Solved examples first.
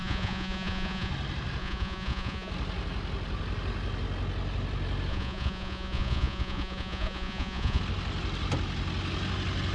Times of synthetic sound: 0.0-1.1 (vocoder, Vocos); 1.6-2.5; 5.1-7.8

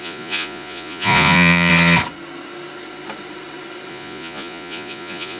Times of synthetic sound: 0.0-1.7 (vocoder, Vocos); 3.9-5.4

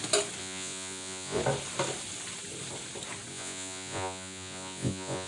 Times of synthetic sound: 0.4-1.4 (vocoder, Vocos); 3.3-5.3

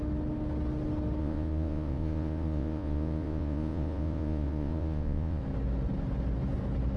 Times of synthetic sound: 1.2-5.4 (vocoder, Vocos)